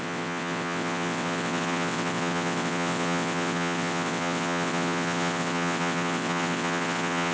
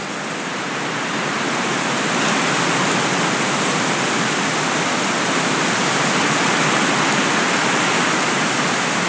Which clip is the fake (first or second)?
first